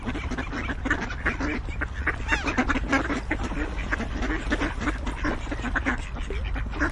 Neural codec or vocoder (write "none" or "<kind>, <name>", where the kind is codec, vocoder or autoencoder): none